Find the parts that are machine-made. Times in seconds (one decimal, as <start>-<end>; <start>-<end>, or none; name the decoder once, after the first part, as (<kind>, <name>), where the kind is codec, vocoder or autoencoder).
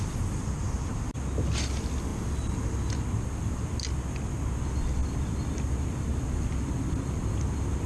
none